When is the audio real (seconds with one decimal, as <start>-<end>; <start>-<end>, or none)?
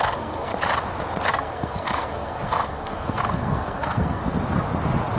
0.5-1.3; 4.2-5.2